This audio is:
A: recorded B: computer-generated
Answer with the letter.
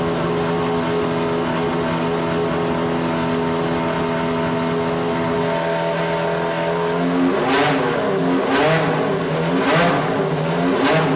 A